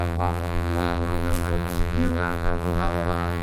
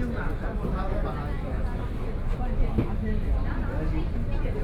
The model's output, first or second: first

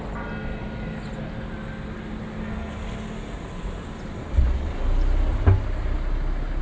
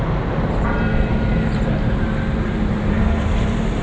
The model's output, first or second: second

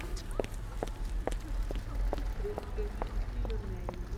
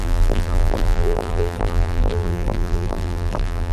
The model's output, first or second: second